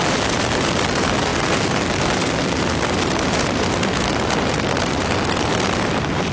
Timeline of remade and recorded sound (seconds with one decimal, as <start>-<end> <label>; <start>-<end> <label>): 0.0-6.3 recorded